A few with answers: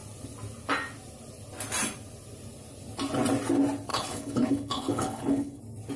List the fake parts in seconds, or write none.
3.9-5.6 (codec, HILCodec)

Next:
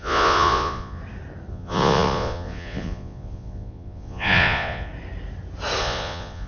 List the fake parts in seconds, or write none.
0.0-1.0 (vocoder, Vocos); 1.5-4.9; 5.8-6.5

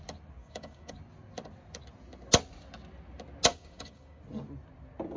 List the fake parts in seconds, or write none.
0.4-0.9 (codec, DAC); 3.5-4.2

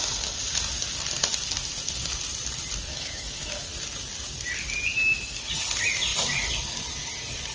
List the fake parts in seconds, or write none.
2.9-3.7 (autoencoder, DAC-VAE); 4.9-5.5